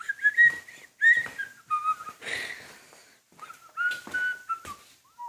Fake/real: real